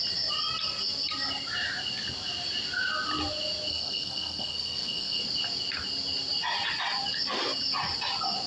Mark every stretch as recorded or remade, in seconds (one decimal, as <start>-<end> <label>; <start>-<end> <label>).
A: 0.0-3.7 recorded; 3.7-5.2 remade; 5.2-8.5 recorded